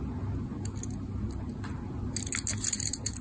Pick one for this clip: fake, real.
real